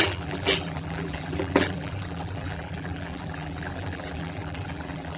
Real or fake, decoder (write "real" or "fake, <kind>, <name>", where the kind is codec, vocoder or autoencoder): fake, vocoder, BigVGAN v2